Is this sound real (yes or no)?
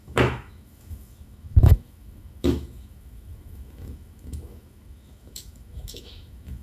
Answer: no